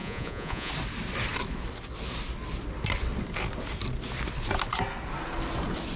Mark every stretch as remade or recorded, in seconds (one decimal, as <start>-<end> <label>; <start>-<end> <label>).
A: 0.0-0.7 remade; 0.7-6.0 recorded